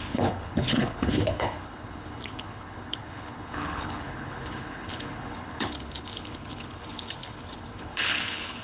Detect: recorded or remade remade